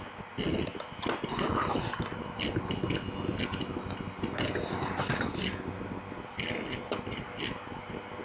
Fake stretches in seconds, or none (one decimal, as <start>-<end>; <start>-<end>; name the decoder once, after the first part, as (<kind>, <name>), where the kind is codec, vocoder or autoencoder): none